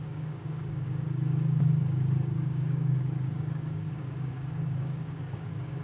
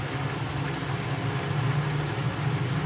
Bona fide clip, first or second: second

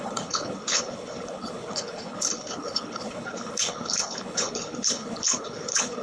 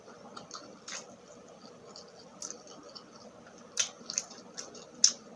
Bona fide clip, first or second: second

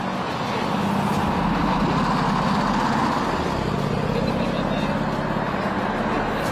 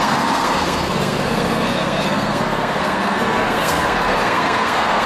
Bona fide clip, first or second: first